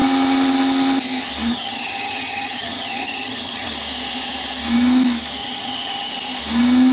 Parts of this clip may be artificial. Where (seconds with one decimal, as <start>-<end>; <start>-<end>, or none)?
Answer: 1.5-3.7; 5.4-6.1